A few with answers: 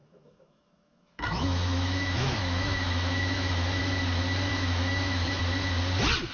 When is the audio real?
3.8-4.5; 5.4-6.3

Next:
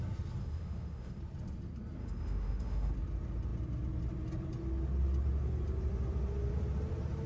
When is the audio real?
0.0-0.4; 1.2-2.0; 2.9-7.3